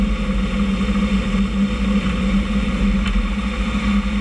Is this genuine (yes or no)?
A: yes